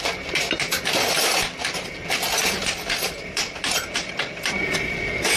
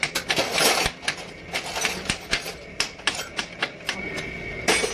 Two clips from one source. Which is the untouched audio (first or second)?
second